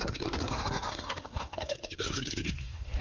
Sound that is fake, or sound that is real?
fake